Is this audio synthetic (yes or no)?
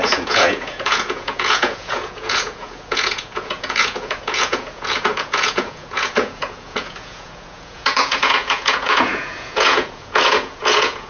yes